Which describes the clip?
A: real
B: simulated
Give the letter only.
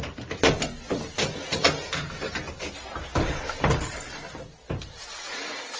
A